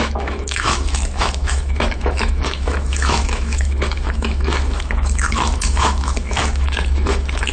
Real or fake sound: fake